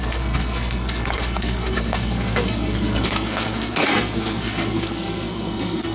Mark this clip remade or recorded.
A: remade